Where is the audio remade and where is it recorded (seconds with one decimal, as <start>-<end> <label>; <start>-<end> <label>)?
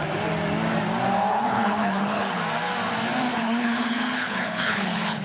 0.0-1.3 recorded; 1.3-2.4 remade; 2.4-3.3 recorded; 3.3-5.2 remade